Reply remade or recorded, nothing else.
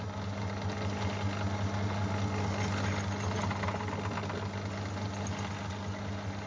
recorded